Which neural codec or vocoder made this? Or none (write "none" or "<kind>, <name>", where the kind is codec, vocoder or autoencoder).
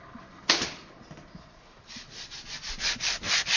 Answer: none